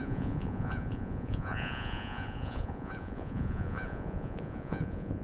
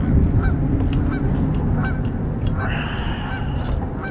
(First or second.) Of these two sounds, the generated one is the first